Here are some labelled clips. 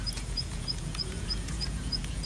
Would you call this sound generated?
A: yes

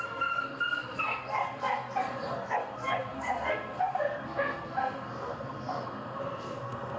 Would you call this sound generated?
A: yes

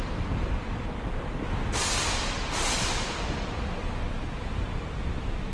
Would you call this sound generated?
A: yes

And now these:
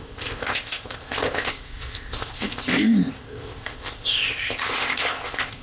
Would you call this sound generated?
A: yes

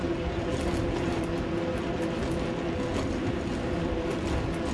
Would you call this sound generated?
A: no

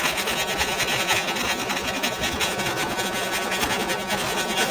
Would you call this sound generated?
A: yes